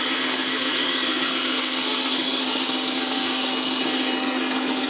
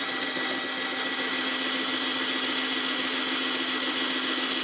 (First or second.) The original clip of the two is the second